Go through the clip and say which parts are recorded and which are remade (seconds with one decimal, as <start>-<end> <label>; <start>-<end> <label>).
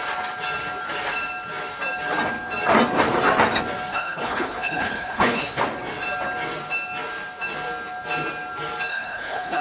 0.0-3.9 recorded; 3.9-5.6 remade; 5.6-8.9 recorded; 8.9-9.6 remade